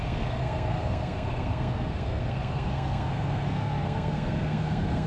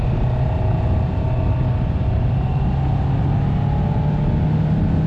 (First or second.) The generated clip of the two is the first